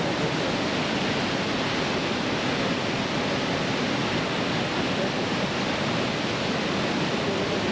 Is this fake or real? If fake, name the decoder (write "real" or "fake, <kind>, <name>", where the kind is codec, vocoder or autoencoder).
real